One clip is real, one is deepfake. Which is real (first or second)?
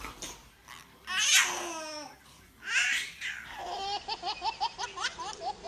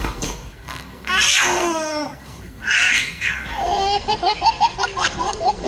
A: first